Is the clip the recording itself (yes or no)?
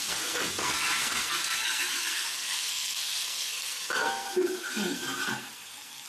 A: no